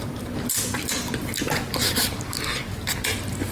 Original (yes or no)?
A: yes